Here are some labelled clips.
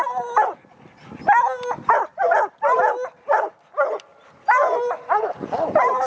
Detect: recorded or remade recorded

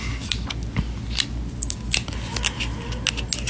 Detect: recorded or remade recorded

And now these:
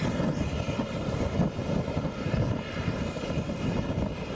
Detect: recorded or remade recorded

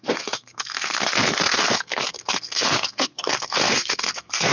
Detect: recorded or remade remade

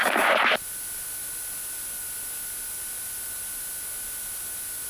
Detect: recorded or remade recorded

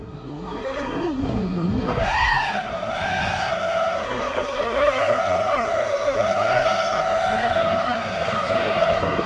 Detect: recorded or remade remade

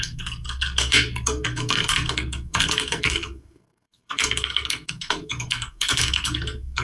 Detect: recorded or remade remade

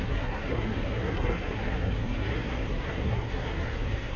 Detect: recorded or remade remade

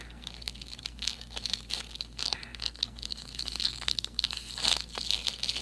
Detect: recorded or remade remade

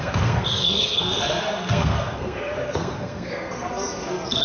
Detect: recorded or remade remade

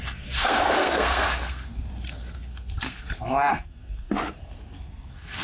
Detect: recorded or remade remade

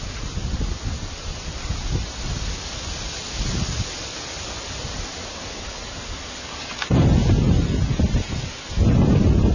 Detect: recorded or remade recorded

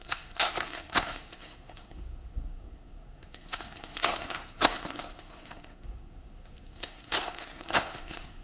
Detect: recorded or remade remade